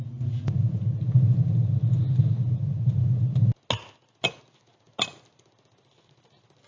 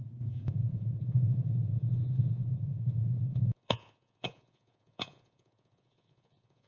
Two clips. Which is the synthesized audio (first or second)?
second